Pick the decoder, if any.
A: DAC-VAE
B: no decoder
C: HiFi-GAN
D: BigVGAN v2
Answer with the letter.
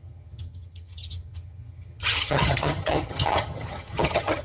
C